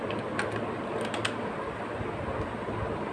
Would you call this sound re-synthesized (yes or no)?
no